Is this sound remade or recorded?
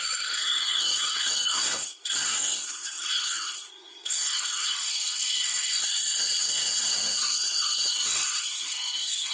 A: remade